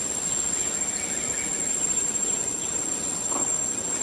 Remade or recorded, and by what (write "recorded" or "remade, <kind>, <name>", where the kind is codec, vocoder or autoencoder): recorded